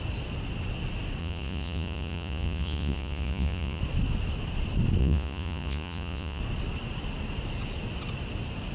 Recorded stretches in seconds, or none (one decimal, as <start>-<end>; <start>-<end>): 0.0-1.2; 3.8-5.0; 6.4-8.7